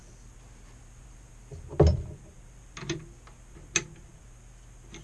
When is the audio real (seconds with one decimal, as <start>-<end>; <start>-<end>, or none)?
0.0-5.0